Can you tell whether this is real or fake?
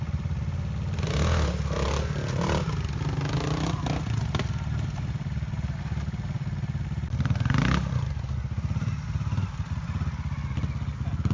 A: real